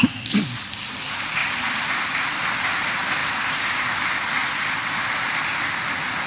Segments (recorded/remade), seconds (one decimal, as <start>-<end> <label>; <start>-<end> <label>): 0.0-1.4 recorded; 1.4-2.7 remade; 2.7-3.2 recorded; 3.2-3.9 remade; 3.9-4.4 recorded; 4.4-5.0 remade; 5.0-6.3 recorded